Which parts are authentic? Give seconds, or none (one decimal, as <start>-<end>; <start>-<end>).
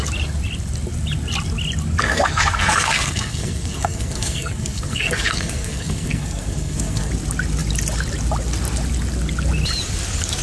0.0-2.0; 7.1-10.4